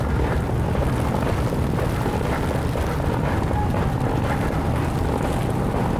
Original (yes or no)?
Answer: yes